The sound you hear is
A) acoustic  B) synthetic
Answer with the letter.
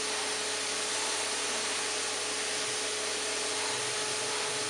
A